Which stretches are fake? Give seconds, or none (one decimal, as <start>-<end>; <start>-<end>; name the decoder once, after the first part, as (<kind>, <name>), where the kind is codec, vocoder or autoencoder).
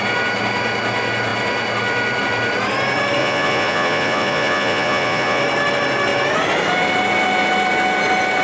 3.2-5.4 (vocoder, Vocos)